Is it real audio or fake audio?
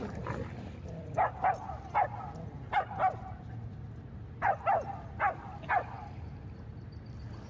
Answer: real